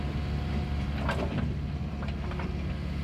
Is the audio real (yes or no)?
yes